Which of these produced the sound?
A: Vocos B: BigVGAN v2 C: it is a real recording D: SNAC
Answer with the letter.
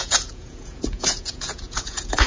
A